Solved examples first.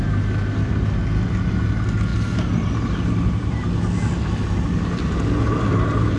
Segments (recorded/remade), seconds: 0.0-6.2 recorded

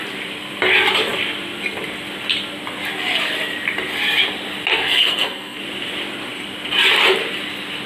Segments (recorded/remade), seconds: 0.0-4.7 recorded; 4.7-5.6 remade; 5.6-7.9 recorded

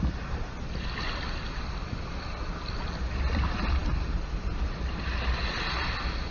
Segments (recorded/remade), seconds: 0.0-6.3 recorded

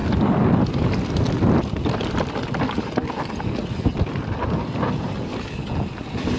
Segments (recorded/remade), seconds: 0.0-6.4 recorded

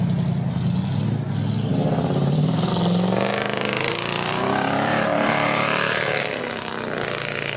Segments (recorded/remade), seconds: 0.0-1.7 recorded; 1.7-2.7 remade; 2.7-3.3 recorded; 3.3-6.4 remade; 6.4-7.6 recorded

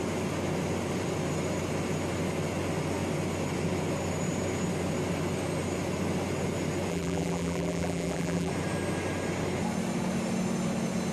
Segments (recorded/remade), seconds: 0.0-6.9 recorded; 6.9-8.5 remade; 8.5-11.1 recorded

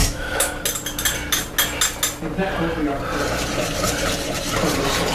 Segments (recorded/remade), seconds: 0.0-0.5 remade; 0.5-5.1 recorded